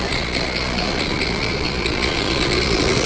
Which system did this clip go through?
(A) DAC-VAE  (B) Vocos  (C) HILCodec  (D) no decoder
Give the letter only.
B